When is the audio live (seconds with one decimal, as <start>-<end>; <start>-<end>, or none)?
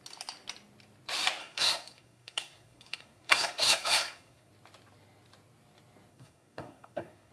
0.0-1.4; 4.5-6.1